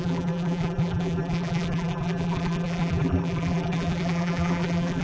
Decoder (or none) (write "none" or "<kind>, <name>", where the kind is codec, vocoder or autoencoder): vocoder, BigVGAN v2